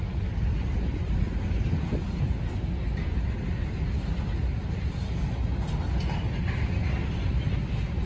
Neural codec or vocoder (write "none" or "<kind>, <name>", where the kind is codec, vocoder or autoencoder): none